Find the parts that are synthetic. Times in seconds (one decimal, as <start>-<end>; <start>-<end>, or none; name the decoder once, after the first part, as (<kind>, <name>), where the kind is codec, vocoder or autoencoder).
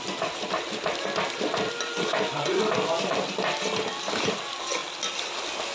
none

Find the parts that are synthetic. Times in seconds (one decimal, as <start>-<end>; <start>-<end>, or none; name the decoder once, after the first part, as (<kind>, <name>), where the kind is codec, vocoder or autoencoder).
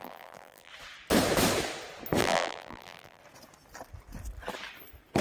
0.0-0.7 (vocoder, BigVGAN v2); 2.2-3.2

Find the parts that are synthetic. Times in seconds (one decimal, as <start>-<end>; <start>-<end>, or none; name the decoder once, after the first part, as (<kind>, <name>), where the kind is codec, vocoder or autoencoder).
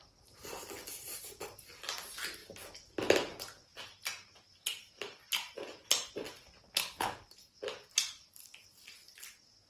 none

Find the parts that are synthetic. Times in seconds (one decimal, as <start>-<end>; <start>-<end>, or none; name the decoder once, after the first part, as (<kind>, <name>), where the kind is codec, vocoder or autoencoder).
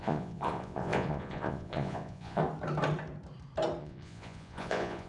0.0-2.4 (vocoder, Vocos); 3.8-5.1